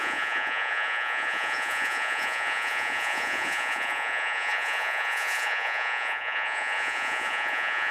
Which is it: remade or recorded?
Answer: remade